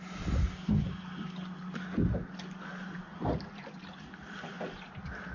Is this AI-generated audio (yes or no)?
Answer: no